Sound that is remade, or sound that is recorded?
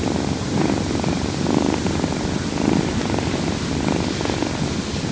recorded